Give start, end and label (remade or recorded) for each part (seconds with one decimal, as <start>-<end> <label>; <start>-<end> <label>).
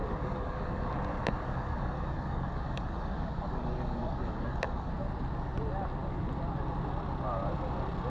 0.0-4.9 remade; 4.9-8.1 recorded